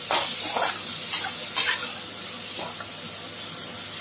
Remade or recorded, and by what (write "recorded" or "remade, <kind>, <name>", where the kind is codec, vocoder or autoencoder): recorded